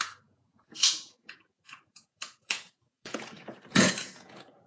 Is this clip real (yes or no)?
no